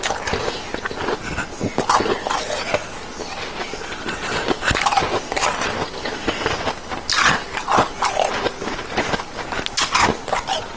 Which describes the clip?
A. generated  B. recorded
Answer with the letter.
B